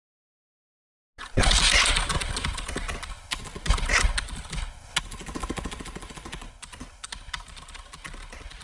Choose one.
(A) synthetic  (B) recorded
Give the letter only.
B